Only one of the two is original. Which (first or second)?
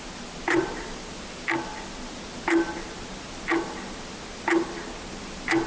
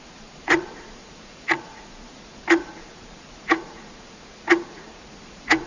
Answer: first